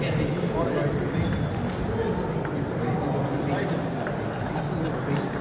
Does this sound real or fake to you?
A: real